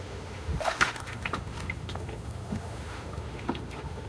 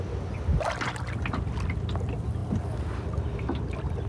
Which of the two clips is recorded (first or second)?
second